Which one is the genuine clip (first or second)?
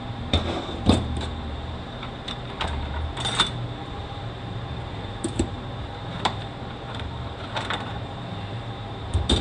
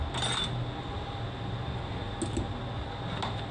second